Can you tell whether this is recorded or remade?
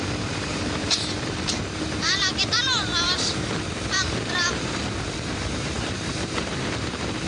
remade